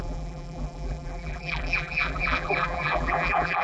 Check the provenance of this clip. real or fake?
fake